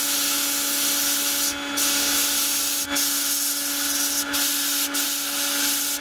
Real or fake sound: real